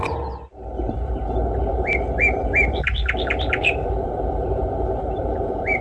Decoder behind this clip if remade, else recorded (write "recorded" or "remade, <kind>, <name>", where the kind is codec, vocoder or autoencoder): remade, vocoder, BigVGAN v2